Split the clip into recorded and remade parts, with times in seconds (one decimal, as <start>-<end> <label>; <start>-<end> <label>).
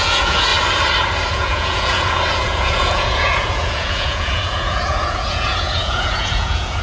0.0-0.5 remade; 0.5-1.3 recorded; 1.3-6.8 remade